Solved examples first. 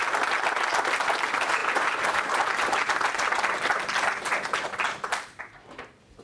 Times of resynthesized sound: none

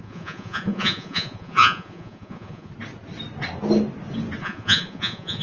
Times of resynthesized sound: 0.0-2.7; 4.4-5.4

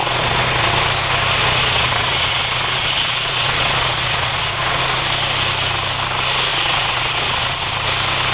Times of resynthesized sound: 0.0-0.7; 1.4-4.8; 6.5-7.7